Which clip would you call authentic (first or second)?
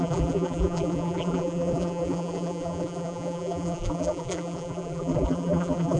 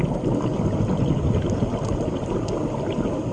second